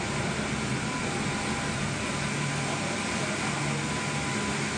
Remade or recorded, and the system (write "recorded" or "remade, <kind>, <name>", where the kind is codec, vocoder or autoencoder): recorded